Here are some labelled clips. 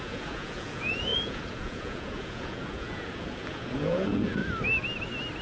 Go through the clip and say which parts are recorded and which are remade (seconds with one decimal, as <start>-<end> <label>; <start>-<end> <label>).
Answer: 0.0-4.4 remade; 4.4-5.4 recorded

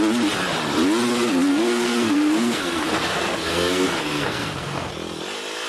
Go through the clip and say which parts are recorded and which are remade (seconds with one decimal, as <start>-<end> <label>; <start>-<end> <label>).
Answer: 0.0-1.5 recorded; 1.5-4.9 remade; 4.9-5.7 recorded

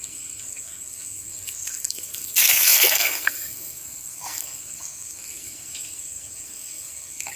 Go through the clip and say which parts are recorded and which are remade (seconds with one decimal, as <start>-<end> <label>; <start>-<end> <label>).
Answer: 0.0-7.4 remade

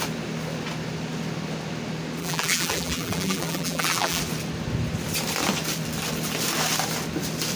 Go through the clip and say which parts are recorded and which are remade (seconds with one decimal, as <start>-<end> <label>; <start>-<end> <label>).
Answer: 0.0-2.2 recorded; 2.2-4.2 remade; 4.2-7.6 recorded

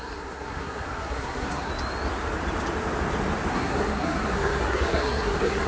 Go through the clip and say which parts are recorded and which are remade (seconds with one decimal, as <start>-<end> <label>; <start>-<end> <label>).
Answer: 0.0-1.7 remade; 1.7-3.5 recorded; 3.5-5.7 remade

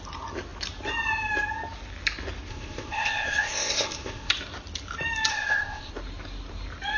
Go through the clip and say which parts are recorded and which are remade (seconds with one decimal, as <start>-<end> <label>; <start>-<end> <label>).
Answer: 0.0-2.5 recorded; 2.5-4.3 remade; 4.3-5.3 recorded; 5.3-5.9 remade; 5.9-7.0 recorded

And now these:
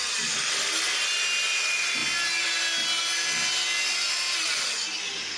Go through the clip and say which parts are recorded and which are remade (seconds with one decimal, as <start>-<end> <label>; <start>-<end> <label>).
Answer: 0.0-5.4 recorded